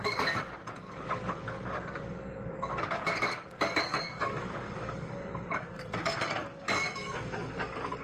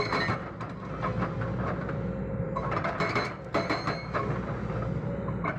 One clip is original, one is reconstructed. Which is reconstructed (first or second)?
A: first